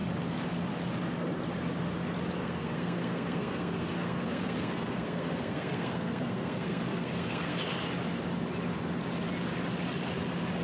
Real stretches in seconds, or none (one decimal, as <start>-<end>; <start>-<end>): 0.0-2.4; 7.6-10.6